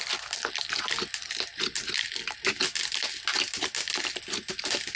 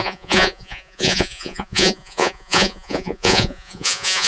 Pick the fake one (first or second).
second